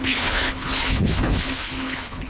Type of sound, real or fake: fake